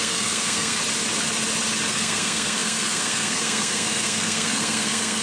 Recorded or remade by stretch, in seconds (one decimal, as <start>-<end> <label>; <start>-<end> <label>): 0.0-0.8 remade; 0.8-1.9 recorded; 1.9-5.2 remade